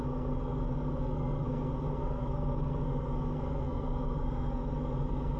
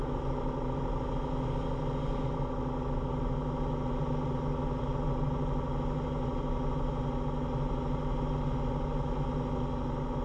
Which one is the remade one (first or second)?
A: first